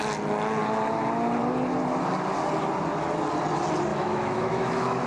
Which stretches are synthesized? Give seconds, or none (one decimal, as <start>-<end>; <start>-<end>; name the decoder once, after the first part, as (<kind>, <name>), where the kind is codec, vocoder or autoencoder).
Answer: 3.9-5.1 (autoencoder, DAC-VAE)